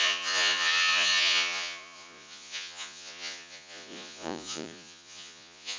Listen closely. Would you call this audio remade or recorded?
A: remade